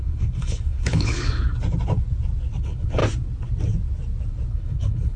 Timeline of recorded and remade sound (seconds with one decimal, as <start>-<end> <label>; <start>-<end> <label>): 0.0-1.5 remade; 1.5-2.6 recorded; 2.6-3.0 remade; 3.0-4.5 recorded; 4.5-5.2 remade